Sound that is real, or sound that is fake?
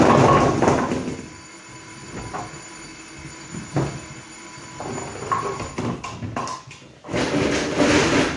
real